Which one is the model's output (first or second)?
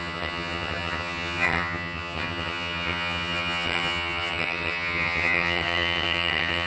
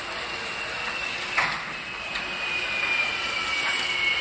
first